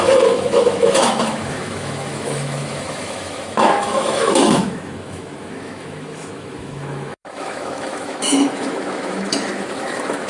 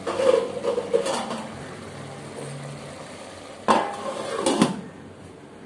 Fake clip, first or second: first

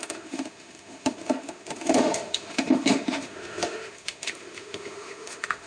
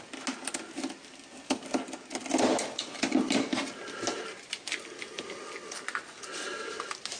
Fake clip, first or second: first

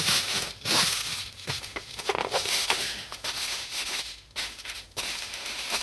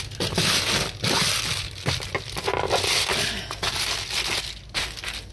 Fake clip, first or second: first